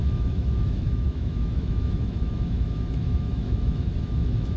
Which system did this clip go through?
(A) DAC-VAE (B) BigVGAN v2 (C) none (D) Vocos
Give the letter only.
A